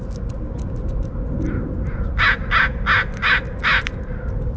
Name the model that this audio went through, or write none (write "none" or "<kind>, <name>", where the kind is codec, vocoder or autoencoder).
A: none